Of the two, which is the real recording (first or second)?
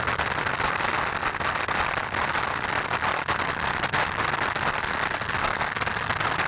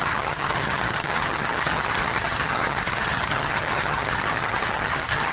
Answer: first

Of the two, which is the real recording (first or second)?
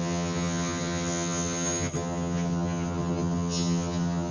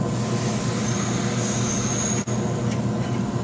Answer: second